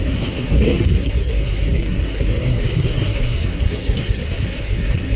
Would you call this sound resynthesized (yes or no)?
yes